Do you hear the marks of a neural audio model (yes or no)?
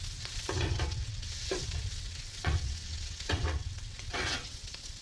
yes